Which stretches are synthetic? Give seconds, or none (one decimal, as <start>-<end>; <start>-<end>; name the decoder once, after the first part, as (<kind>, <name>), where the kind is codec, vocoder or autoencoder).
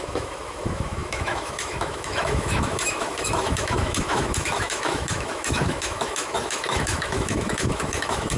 0.0-8.4 (autoencoder, DAC-VAE)